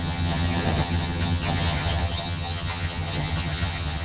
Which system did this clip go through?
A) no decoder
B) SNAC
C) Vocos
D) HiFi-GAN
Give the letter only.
D